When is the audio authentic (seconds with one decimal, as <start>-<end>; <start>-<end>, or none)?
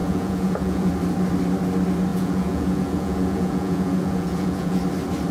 0.9-2.1; 4.8-5.3